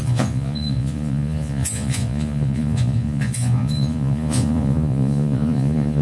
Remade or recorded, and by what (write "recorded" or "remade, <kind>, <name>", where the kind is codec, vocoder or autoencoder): remade, vocoder, Vocos